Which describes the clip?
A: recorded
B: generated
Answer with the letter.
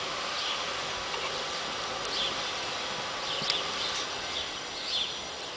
A